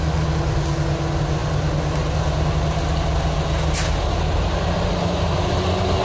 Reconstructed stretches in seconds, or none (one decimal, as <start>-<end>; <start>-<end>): none